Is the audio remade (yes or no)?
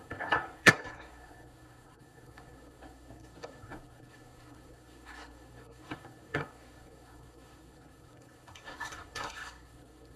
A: yes